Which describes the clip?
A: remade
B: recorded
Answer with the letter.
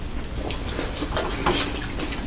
B